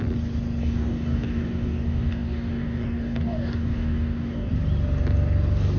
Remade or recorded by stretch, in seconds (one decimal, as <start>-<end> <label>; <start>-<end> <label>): 0.0-0.6 recorded; 0.6-4.5 remade; 4.5-5.8 recorded